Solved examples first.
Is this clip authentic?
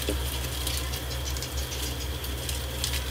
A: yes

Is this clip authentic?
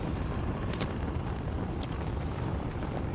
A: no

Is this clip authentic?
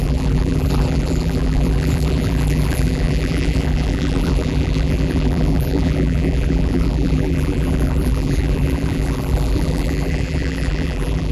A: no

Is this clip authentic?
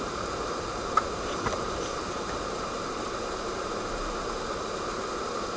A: no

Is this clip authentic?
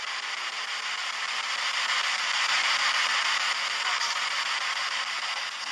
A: yes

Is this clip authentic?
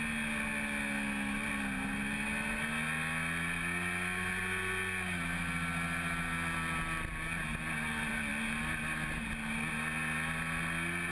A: yes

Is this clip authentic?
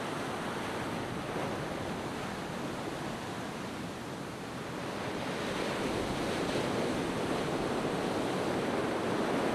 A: yes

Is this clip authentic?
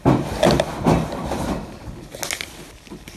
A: yes